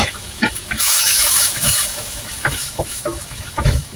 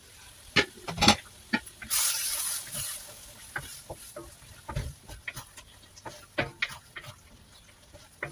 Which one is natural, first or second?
second